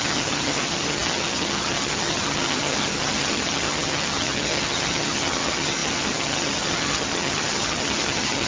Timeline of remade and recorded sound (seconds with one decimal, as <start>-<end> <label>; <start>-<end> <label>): 0.0-8.5 remade